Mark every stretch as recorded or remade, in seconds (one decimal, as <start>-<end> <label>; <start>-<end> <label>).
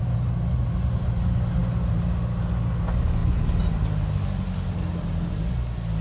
0.0-6.0 recorded